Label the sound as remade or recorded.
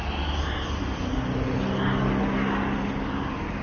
recorded